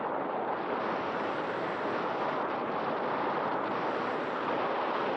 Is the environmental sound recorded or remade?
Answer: recorded